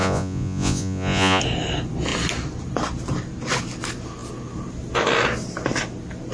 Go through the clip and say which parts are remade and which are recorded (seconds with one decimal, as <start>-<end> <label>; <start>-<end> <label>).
0.0-1.4 remade; 1.4-6.3 recorded